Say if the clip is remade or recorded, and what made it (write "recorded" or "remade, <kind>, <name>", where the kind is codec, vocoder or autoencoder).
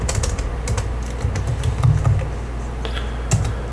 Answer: recorded